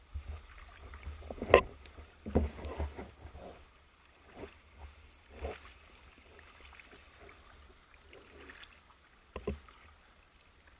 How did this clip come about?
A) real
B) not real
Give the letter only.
A